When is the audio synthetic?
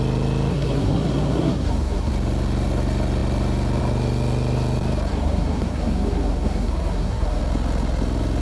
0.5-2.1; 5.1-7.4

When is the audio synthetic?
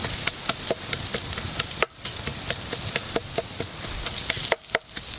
none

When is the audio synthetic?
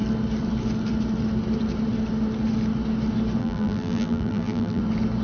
3.4-4.8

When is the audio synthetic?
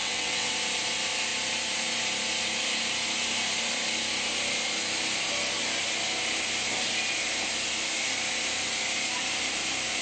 0.0-0.5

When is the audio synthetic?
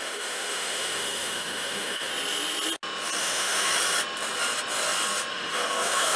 0.0-2.1; 3.2-3.7; 5.3-6.2